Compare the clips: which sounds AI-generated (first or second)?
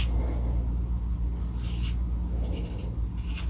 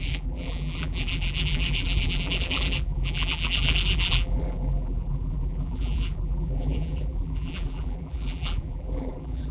second